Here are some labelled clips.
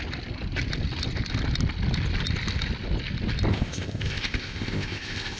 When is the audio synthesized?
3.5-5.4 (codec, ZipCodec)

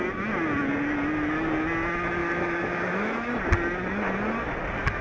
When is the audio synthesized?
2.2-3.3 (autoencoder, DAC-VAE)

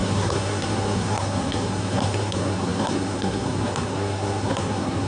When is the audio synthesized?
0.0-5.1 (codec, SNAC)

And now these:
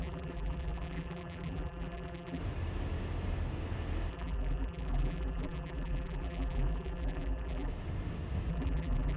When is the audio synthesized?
0.0-2.4 (vocoder, BigVGAN v2); 4.1-7.7; 8.5-9.2